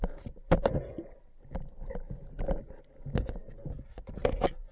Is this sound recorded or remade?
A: recorded